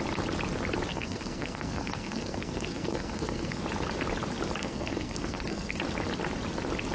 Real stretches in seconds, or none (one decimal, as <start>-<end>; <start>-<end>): 0.0-0.9; 3.6-4.6; 5.8-6.9